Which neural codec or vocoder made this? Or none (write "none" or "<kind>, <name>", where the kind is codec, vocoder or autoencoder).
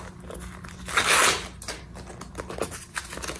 none